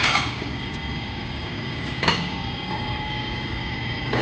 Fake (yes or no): yes